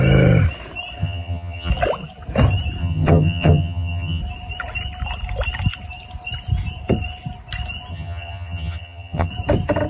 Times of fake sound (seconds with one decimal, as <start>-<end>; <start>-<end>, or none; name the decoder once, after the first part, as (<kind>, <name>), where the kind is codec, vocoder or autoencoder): 1.0-1.7 (vocoder, HiFi-GAN); 2.8-4.2; 7.9-9.3